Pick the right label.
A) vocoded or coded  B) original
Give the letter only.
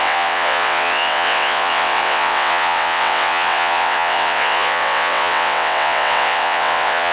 A